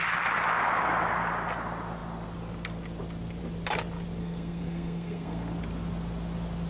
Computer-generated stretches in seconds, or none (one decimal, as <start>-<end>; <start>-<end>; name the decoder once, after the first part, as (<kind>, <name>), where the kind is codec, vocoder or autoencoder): 4.2-5.6 (codec, SNAC)